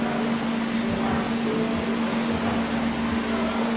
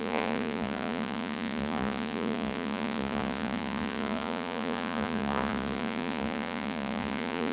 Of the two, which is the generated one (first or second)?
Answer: second